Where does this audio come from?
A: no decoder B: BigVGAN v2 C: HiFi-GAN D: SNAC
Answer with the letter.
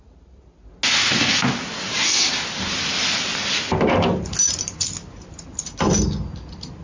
A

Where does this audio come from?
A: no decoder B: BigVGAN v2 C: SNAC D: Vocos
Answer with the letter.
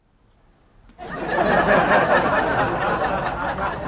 A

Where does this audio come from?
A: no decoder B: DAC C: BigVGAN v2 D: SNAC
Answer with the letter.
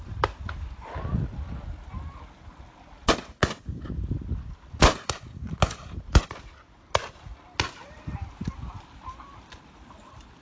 A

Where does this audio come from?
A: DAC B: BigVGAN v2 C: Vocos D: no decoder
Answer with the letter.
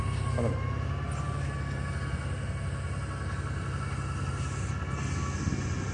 D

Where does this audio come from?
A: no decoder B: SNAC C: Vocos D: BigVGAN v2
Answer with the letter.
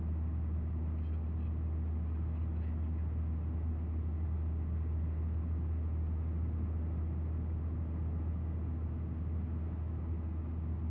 A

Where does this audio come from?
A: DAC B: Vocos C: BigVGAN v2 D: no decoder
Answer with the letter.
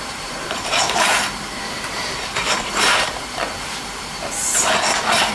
C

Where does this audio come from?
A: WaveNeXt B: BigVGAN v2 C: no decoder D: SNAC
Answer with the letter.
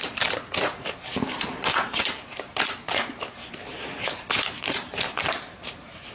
B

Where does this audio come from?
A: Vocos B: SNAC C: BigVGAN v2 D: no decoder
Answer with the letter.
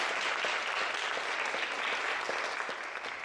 D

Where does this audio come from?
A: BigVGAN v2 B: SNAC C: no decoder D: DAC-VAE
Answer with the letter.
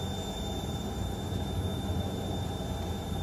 A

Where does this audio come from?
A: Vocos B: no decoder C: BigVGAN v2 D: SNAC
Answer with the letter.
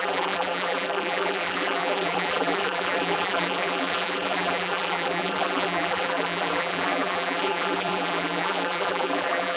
C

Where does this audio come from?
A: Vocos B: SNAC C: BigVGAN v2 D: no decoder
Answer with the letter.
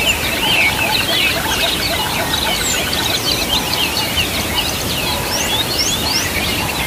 D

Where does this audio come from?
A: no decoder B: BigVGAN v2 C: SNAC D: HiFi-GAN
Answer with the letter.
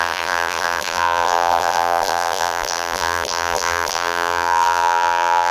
B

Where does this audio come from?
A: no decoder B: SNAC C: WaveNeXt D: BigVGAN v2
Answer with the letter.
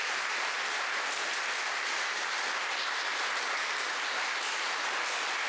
A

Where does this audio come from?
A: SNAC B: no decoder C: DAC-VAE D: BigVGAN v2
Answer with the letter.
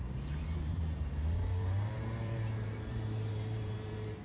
D